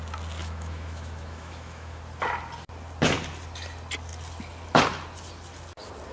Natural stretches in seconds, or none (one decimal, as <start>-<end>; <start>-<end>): 0.0-0.4; 2.0-6.1

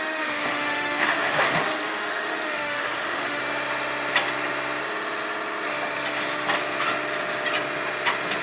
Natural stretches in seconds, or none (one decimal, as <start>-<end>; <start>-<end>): 3.4-8.4

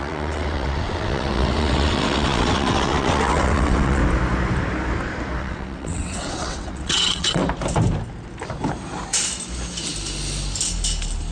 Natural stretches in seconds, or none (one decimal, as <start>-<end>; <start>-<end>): 4.0-5.4; 7.4-11.3

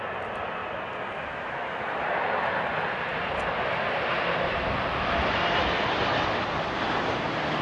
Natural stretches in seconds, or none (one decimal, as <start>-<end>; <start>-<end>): 0.0-7.6

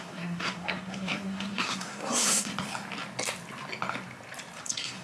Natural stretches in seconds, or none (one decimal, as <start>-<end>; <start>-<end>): 2.5-4.6

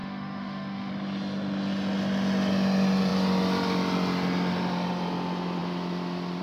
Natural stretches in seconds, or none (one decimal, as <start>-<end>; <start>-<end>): 0.9-6.4

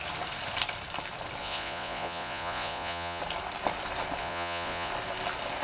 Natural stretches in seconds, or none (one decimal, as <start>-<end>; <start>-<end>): 0.0-1.4; 3.2-4.2; 4.9-5.6

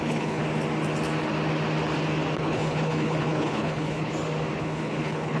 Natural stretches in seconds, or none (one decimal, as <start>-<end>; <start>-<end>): 0.4-2.4; 4.1-4.6